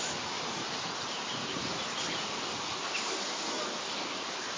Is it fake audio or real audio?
real